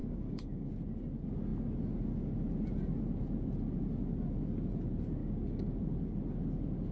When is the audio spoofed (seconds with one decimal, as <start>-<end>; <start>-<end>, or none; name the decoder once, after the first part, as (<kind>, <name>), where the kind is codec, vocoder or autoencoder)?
0.0-0.7 (codec, DAC); 5.2-5.8